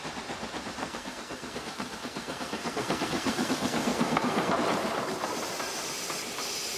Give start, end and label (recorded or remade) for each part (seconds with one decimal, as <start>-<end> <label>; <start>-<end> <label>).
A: 0.0-0.8 recorded; 0.8-4.5 remade; 4.5-6.8 recorded